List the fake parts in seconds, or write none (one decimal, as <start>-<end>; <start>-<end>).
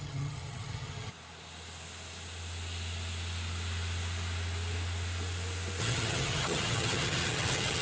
0.0-1.1; 5.8-7.8